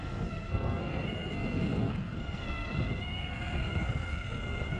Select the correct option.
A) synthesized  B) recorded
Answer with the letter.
A